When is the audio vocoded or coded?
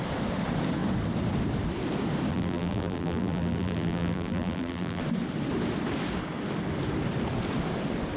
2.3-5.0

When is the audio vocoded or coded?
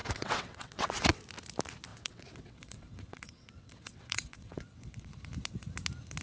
0.0-1.2; 1.9-5.1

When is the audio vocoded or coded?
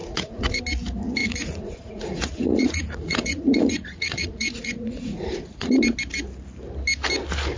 0.0-0.6; 1.2-5.8